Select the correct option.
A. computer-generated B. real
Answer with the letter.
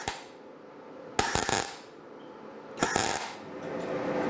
B